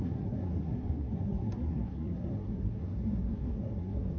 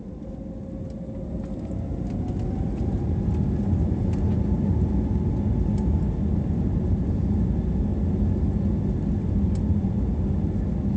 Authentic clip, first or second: second